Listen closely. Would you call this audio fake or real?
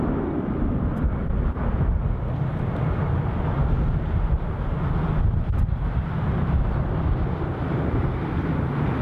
real